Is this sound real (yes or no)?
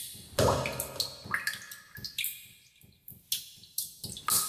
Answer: yes